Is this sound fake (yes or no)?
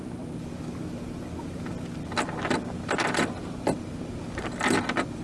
no